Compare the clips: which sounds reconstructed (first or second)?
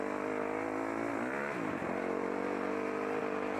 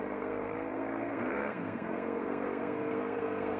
second